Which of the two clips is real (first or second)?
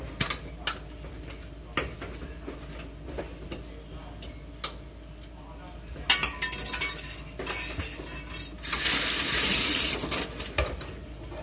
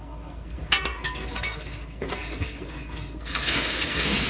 first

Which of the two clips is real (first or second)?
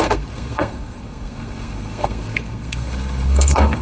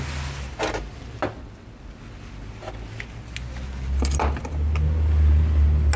second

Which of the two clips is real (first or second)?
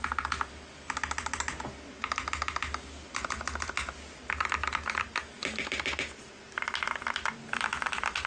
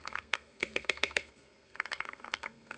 first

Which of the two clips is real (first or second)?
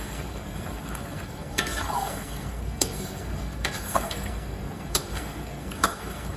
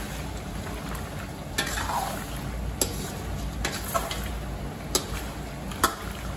second